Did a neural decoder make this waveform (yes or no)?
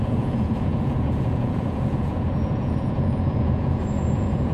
yes